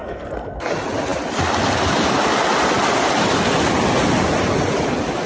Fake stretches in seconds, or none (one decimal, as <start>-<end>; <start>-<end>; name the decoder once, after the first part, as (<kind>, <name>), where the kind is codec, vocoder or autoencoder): 0.0-0.7 (codec, SNAC)